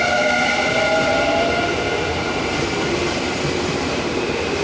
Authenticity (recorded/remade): remade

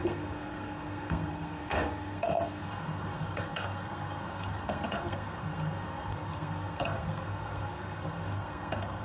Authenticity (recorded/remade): remade